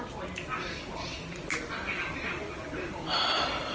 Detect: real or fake real